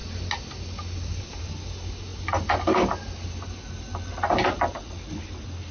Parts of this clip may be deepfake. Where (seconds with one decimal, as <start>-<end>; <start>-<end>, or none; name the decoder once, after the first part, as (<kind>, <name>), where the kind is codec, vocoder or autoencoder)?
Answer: none